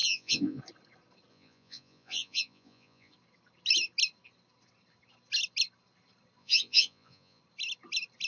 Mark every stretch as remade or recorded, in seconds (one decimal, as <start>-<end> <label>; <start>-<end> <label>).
0.0-0.6 remade; 0.6-1.3 recorded; 1.3-3.1 remade; 3.1-6.4 recorded; 6.4-7.4 remade; 7.4-8.3 recorded